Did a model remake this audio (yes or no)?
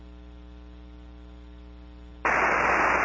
no